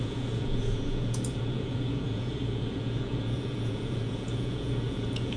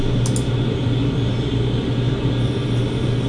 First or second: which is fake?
first